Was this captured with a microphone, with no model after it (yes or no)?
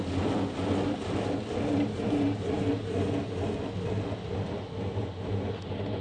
yes